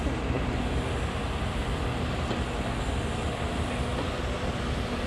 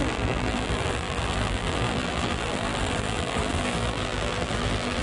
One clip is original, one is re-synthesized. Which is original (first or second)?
first